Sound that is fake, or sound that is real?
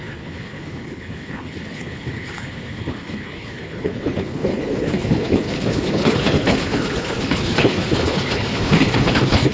fake